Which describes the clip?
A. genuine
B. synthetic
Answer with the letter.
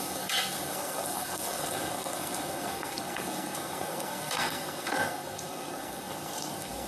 B